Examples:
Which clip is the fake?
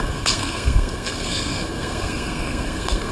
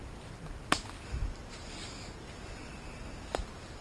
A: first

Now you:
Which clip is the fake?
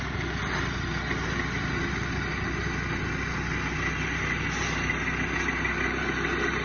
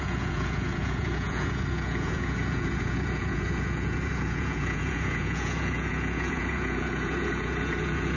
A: second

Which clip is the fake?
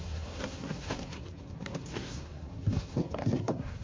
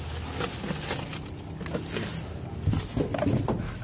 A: first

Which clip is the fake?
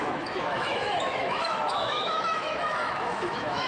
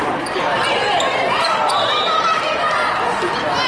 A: first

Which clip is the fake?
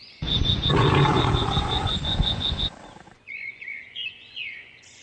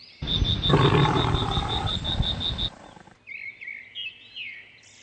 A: first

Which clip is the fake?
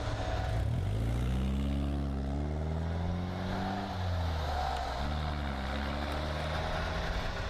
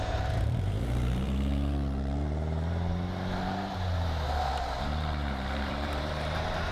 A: second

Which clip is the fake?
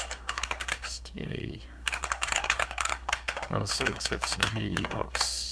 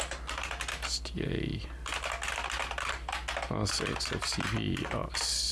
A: first